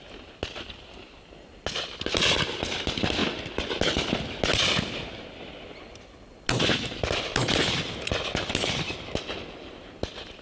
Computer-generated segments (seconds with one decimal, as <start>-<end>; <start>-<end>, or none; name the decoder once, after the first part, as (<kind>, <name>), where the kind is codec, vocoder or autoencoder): none